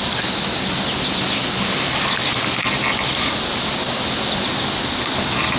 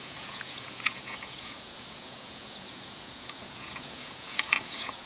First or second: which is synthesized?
second